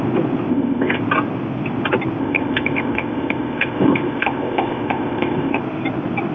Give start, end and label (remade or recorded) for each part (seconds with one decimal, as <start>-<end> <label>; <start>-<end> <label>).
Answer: 0.0-0.5 recorded; 0.5-1.0 remade; 1.0-2.2 recorded; 2.2-5.6 remade; 5.6-6.3 recorded